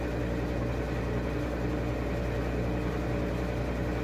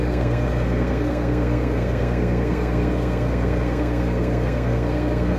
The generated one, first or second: second